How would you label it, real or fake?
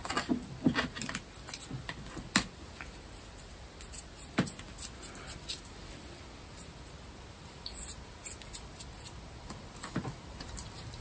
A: real